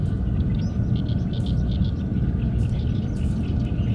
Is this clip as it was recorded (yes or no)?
yes